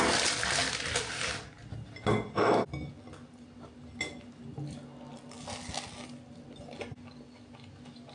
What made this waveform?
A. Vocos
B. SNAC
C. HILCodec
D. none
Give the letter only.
D